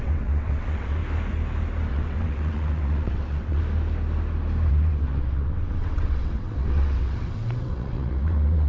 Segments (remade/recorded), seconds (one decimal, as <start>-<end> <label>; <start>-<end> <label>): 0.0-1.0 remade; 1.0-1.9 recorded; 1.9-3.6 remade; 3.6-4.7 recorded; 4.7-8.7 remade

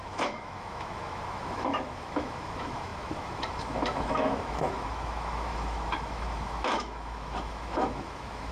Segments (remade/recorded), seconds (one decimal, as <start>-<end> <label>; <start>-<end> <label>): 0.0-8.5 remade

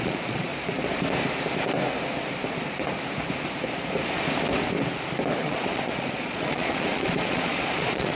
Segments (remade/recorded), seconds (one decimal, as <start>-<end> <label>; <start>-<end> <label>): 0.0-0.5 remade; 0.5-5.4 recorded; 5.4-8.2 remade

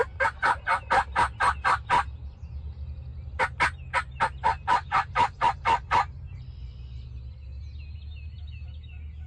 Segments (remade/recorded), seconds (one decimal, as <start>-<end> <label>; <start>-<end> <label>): 0.0-9.3 recorded

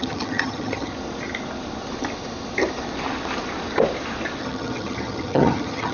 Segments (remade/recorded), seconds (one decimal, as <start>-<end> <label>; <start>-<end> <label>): 0.0-0.9 remade; 0.9-4.4 recorded; 4.4-5.9 remade

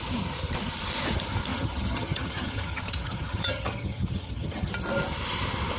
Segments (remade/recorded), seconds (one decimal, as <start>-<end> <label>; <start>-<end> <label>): 0.0-1.5 recorded; 1.5-4.7 remade; 4.7-5.8 recorded

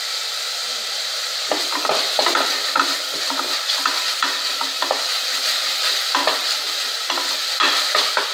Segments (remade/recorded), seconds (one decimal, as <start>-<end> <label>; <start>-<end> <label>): 0.0-8.3 recorded

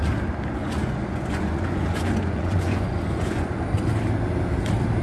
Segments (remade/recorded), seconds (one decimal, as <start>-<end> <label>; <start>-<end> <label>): 0.0-0.6 recorded; 0.6-3.6 remade; 3.6-5.0 recorded